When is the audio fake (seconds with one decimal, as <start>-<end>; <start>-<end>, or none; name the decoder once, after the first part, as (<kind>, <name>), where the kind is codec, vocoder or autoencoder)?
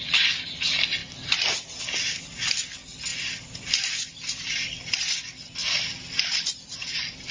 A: none